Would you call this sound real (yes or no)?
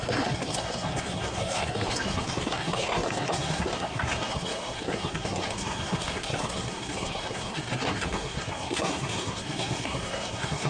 no